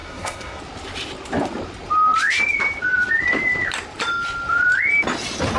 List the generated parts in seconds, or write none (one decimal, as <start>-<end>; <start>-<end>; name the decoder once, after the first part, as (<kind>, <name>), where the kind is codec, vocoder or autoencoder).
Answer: 0.0-0.6 (codec, SNAC)